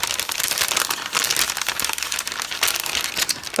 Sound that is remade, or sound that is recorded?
recorded